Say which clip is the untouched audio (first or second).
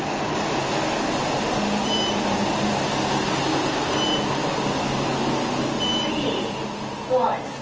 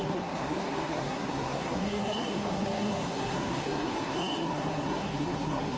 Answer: first